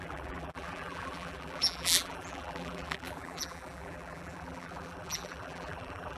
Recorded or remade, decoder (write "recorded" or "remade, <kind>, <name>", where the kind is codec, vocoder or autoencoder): remade, vocoder, BigVGAN v2